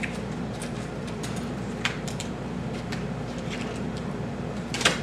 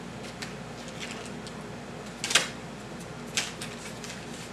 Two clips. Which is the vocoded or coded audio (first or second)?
first